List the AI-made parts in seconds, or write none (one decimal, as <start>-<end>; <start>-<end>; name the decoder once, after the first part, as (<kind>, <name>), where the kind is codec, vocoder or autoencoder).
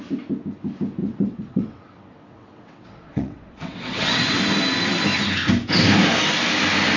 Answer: 1.0-4.4 (vocoder, WaveNeXt)